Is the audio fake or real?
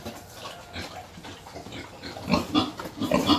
real